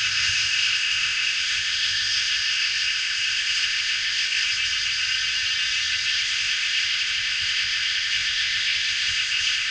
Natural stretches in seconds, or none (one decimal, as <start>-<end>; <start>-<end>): 4.5-6.1